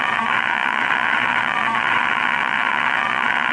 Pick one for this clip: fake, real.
fake